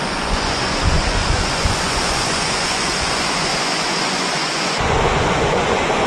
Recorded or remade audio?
remade